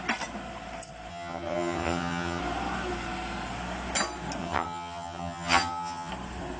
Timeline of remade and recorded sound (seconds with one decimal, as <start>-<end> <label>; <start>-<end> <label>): 0.0-1.1 recorded; 1.1-2.4 remade; 2.4-4.4 recorded; 4.4-6.1 remade; 6.1-6.6 recorded